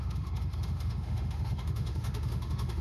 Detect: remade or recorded remade